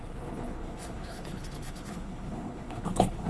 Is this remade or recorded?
remade